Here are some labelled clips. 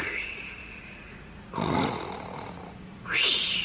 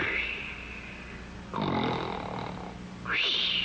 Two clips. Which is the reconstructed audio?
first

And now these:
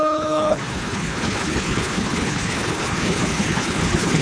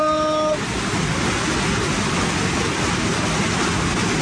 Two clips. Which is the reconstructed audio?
first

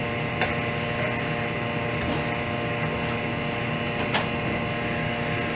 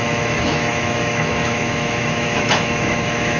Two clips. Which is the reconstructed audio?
second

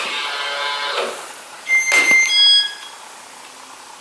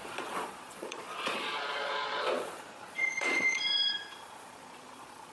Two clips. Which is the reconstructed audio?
second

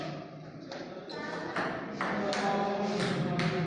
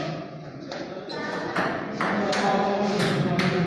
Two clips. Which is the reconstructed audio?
second